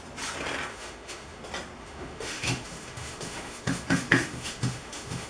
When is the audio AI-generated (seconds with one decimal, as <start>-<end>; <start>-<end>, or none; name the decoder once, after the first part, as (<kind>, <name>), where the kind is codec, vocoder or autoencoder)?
0.7-1.4 (autoencoder, DAC-VAE); 1.8-5.3